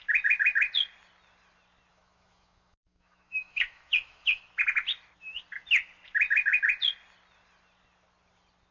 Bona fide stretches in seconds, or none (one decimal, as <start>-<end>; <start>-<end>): 0.0-1.9; 4.4-8.7